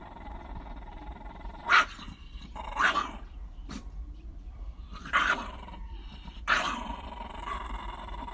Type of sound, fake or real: fake